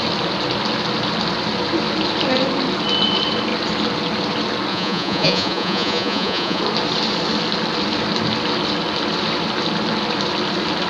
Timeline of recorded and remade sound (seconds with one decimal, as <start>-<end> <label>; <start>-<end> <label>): 0.0-4.7 recorded; 4.7-6.6 remade; 6.6-10.9 recorded